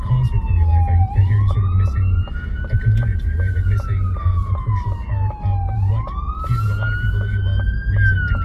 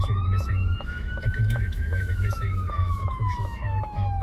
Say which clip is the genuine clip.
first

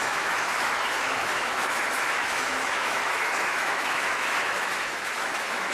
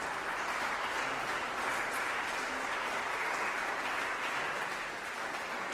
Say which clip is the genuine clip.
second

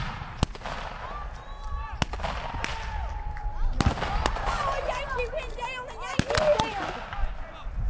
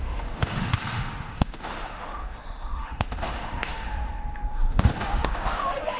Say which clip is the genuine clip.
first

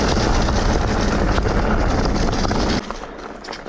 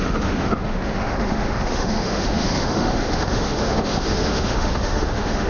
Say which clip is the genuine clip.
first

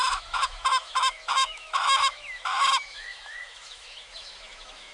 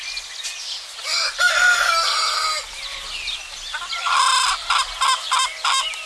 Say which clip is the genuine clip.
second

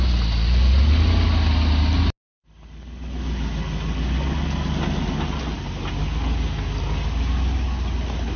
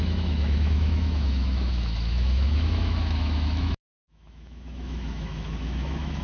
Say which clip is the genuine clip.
first